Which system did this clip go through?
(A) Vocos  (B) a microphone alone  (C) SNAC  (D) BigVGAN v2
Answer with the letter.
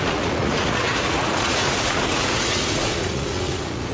A